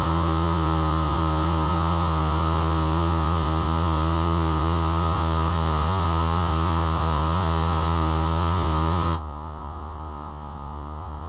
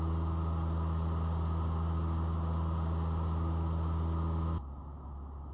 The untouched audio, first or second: second